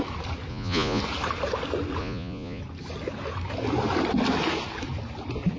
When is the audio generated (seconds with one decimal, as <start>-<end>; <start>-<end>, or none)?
0.5-1.0; 2.0-2.6